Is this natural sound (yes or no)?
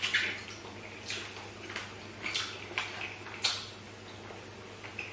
yes